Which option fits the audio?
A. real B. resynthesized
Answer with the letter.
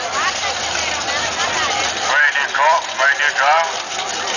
A